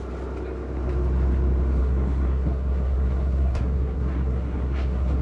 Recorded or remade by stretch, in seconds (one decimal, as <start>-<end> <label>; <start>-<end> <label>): 0.0-1.8 recorded; 1.8-5.2 remade